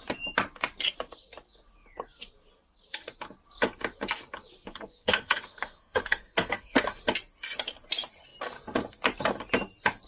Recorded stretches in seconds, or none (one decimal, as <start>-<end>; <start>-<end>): 0.0-4.7; 7.0-10.1